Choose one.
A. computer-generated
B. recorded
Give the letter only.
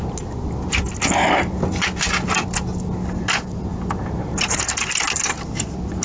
B